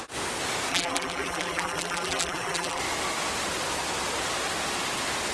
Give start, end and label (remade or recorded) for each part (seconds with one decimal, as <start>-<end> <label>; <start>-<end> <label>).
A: 0.0-0.7 recorded; 0.7-2.8 remade; 2.8-5.3 recorded